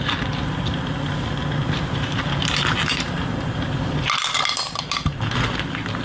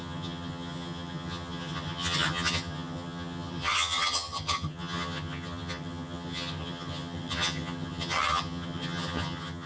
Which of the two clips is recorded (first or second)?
first